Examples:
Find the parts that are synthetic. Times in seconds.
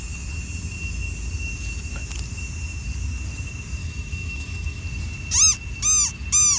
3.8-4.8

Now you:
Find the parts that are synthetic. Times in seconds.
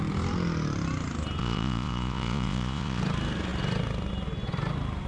1.4-3.0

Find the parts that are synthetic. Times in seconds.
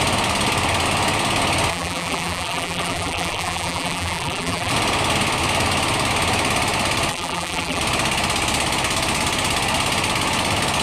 1.7-4.7; 7.1-7.8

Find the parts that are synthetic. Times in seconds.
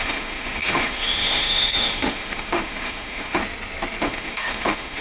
0.0-3.4; 4.0-5.0